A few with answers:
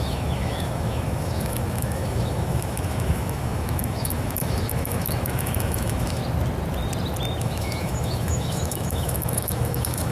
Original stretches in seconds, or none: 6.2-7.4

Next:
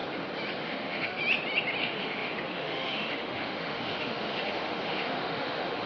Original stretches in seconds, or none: 0.0-0.6; 1.2-1.8

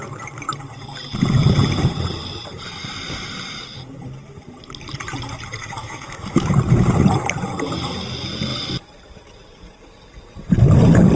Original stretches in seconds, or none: 0.0-5.6; 6.5-11.2

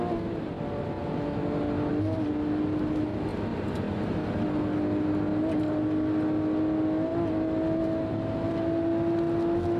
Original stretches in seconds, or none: 0.0-9.8